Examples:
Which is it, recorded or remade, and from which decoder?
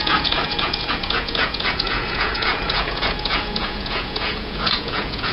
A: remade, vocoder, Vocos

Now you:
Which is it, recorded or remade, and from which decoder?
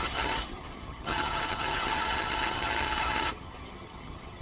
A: remade, vocoder, HiFi-GAN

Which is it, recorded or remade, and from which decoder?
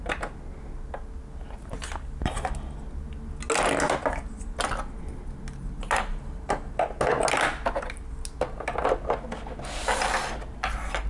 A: recorded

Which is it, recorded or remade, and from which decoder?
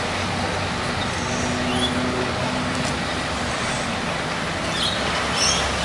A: recorded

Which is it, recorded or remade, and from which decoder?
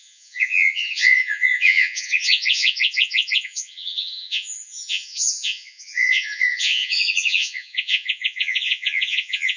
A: remade, vocoder, Vocos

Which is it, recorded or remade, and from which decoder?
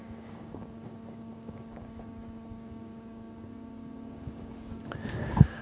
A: remade, codec, DAC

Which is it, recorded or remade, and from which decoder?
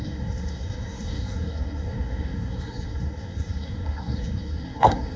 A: remade, codec, SNAC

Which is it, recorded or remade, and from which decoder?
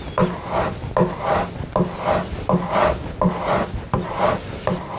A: recorded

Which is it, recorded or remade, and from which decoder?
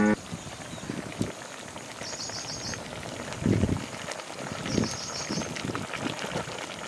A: recorded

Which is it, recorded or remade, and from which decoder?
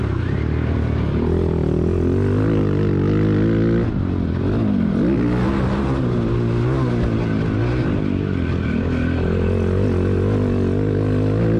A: recorded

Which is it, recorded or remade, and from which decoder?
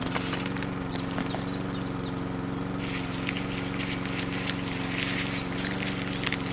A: recorded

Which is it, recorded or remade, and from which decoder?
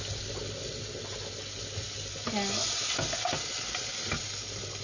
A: recorded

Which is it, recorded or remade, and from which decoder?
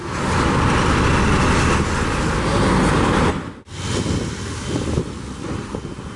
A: recorded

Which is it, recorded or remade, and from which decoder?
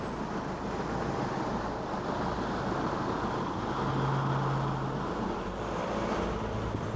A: recorded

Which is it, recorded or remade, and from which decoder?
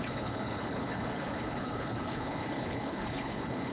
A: remade, codec, HILCodec